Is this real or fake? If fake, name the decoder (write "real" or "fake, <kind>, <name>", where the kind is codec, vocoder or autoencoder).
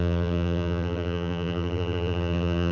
fake, vocoder, BigVGAN v2